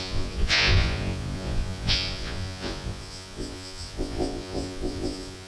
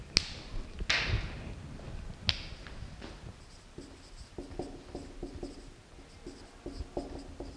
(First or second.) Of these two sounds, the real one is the second